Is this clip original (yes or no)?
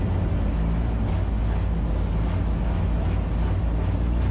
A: yes